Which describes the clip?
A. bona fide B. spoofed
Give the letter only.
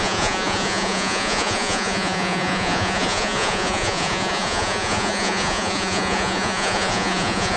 B